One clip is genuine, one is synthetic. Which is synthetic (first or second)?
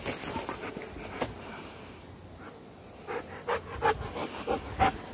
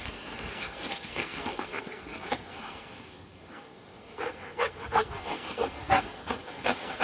second